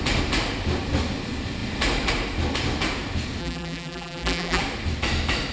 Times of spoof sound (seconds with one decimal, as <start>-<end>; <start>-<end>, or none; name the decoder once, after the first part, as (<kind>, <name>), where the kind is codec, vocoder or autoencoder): 3.4-4.6 (vocoder, BigVGAN v2)